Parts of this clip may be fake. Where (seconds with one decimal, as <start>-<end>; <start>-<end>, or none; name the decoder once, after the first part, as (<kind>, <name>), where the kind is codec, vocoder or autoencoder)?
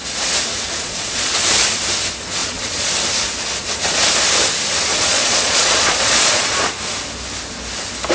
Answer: 0.8-1.3 (vocoder, Vocos); 2.4-2.9; 4.9-6.7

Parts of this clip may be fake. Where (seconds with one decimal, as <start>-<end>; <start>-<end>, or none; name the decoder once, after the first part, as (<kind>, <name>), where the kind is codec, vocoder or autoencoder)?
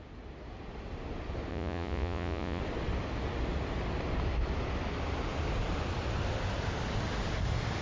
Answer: 1.5-2.6 (vocoder, Vocos)